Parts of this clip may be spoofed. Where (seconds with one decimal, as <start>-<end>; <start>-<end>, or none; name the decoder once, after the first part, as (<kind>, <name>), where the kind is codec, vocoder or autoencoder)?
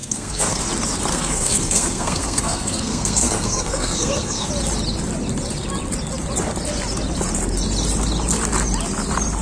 0.0-0.6 (codec, SNAC); 1.1-4.5